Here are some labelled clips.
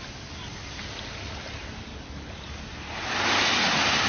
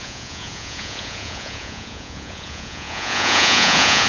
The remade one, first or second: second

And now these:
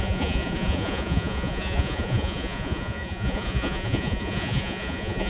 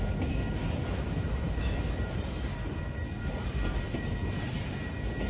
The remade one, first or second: first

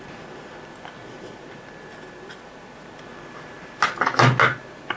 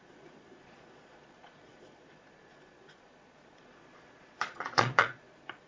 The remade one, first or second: second